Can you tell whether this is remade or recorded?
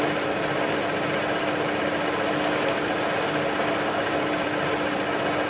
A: recorded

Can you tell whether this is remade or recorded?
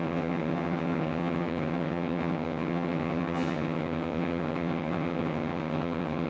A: remade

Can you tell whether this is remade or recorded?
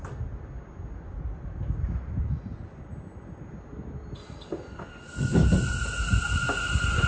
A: recorded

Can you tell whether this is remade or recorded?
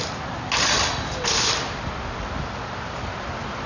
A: recorded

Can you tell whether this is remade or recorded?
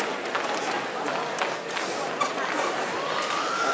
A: recorded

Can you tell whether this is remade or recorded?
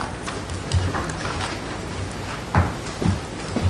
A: recorded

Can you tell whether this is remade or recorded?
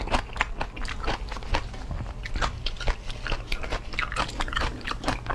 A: recorded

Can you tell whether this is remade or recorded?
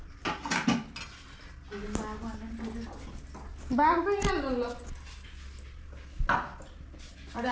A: recorded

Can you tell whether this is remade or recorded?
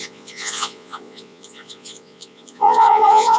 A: remade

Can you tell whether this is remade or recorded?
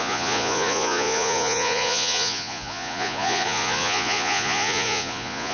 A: remade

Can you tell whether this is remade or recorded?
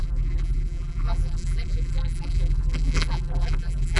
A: remade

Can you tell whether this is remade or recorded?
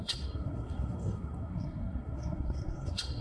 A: remade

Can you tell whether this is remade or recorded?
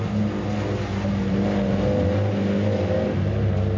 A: recorded